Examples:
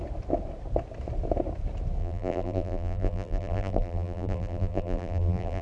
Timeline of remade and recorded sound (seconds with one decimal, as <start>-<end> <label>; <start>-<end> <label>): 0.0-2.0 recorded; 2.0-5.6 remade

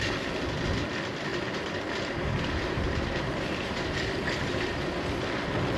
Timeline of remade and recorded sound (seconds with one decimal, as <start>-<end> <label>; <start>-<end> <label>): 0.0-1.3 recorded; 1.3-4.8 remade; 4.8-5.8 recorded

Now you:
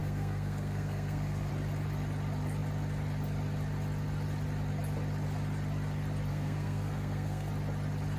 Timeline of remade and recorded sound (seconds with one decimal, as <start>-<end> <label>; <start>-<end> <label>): 0.0-1.5 remade; 1.5-6.3 recorded; 6.3-7.5 remade; 7.5-8.2 recorded

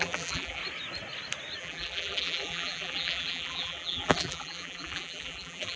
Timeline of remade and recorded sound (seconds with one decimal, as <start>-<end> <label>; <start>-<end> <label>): 0.0-0.6 remade; 0.6-1.6 recorded; 1.6-5.8 remade

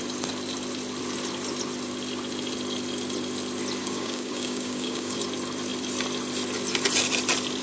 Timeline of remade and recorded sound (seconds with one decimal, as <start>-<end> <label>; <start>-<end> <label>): 0.0-3.8 recorded; 3.8-5.2 remade; 5.2-7.6 recorded

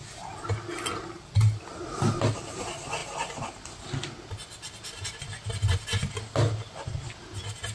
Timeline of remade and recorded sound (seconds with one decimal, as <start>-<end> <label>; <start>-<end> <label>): 0.0-7.7 recorded

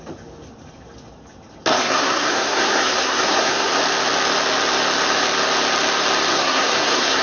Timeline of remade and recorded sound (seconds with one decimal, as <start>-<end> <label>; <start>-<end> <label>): 0.0-1.7 recorded; 1.7-3.7 remade; 3.7-6.3 recorded; 6.3-7.2 remade